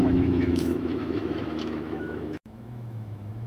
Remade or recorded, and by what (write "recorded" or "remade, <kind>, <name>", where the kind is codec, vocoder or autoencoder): remade, autoencoder, DAC-VAE